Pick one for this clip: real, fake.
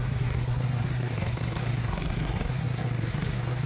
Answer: fake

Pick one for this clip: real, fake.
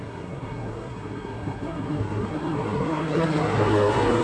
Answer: fake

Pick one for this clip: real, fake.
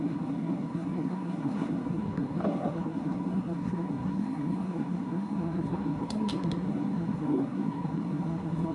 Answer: fake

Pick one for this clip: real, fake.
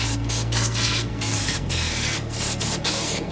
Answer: fake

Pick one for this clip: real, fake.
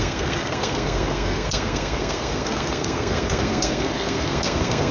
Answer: fake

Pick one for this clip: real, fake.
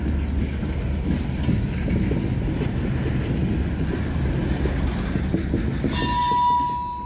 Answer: real